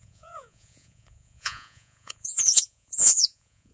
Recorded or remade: remade